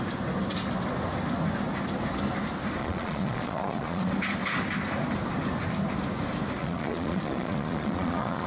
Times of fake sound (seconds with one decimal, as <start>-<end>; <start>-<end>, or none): 2.8-4.1; 6.6-8.5